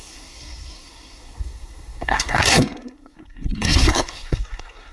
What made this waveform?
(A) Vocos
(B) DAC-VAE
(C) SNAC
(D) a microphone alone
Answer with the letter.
C